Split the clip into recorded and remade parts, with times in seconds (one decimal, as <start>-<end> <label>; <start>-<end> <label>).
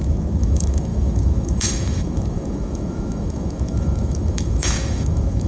0.0-5.5 remade